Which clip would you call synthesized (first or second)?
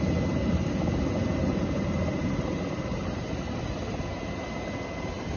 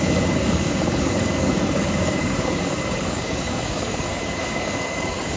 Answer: second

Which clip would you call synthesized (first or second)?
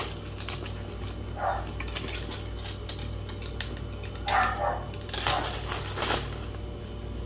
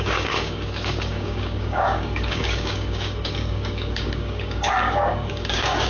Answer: second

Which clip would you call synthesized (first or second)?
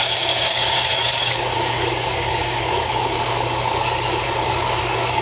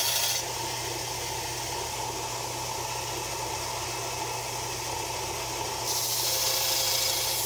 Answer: first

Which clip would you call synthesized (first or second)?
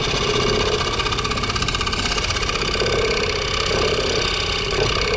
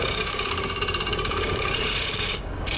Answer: second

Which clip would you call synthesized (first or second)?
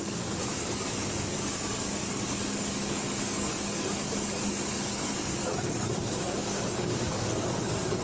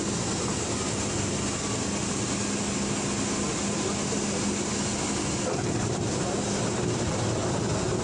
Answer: first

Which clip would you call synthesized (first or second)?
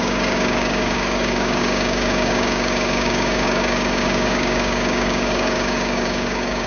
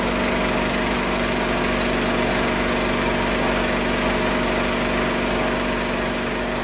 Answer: first